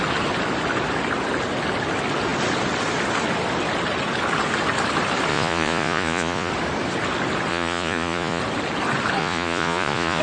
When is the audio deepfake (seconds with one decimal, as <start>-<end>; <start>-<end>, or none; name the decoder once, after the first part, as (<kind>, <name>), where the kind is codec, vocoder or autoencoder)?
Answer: 5.3-6.5 (vocoder, Vocos); 7.5-8.4; 9.2-10.2